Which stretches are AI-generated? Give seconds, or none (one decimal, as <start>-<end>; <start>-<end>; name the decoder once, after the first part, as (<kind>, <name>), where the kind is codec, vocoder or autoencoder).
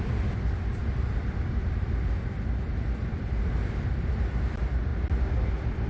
none